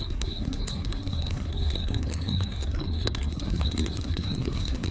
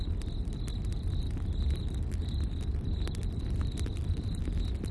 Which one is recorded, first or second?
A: second